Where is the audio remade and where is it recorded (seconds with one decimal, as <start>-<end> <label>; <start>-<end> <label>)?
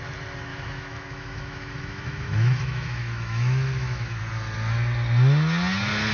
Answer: 0.0-0.5 recorded; 0.5-4.2 remade; 4.2-6.1 recorded